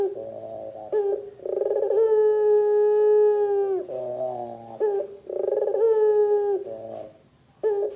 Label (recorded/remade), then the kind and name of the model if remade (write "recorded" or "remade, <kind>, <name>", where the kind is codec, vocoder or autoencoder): recorded